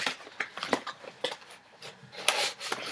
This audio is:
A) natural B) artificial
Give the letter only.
A